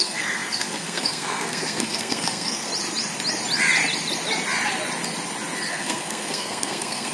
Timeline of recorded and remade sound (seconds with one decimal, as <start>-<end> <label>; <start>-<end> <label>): 0.0-2.7 remade; 2.7-5.7 recorded; 5.7-7.1 remade